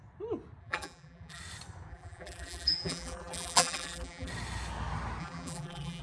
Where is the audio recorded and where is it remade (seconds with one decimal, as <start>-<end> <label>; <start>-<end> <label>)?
0.0-0.6 recorded; 0.6-1.4 remade; 1.4-1.9 recorded; 1.9-4.3 remade; 4.3-5.2 recorded; 5.2-6.0 remade